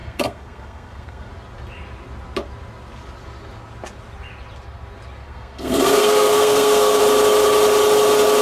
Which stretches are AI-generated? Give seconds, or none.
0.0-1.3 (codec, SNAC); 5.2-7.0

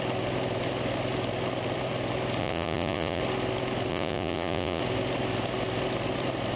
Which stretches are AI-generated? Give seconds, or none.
2.4-3.2 (vocoder, Vocos); 3.9-4.8

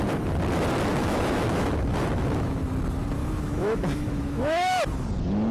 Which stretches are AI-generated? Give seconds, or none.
1.0-2.6 (autoencoder, DAC-VAE); 3.2-4.9

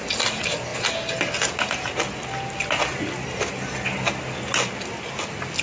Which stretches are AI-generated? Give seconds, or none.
none

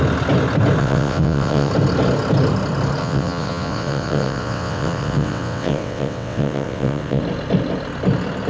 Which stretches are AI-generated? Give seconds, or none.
0.8-1.7 (vocoder, WaveNeXt); 3.0-7.2

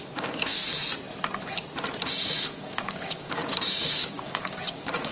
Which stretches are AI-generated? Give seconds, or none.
0.0-0.6 (codec, DAC); 2.4-5.1